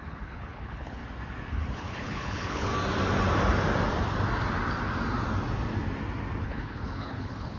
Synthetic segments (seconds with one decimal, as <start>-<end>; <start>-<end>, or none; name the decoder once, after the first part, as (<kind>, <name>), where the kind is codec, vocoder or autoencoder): 0.0-1.0 (codec, HILCodec); 1.5-2.7; 6.4-7.6